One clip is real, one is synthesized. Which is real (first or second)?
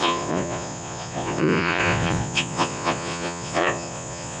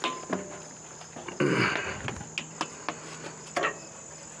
second